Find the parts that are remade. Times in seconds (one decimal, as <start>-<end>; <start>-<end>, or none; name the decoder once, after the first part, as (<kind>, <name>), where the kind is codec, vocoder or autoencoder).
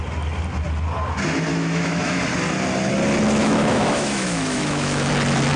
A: 1.5-2.2 (autoencoder, DAC-VAE); 3.4-5.1